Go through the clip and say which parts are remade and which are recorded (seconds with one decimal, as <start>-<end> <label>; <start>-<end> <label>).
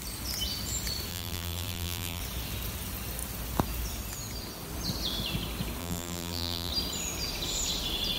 0.0-1.1 recorded; 1.1-2.2 remade; 2.2-5.8 recorded; 5.8-6.7 remade; 6.7-8.2 recorded